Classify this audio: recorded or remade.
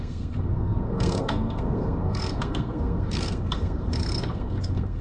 remade